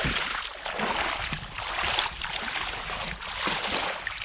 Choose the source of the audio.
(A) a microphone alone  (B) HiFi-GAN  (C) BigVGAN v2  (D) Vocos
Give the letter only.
A